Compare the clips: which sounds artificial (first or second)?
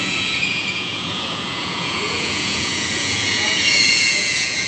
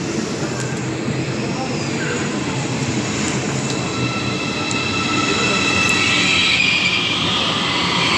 first